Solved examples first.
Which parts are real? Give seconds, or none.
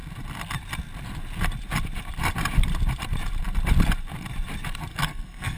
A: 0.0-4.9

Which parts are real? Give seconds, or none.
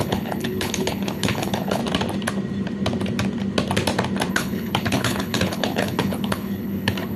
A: 1.8-4.3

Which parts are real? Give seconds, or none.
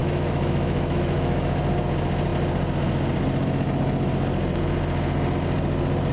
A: 1.6-6.1